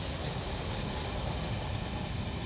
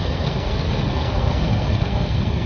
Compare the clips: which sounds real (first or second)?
first